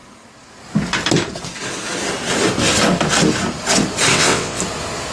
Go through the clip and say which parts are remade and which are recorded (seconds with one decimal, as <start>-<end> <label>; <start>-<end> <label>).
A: 0.0-4.1 recorded; 4.1-4.6 remade; 4.6-5.1 recorded